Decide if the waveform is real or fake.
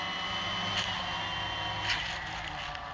real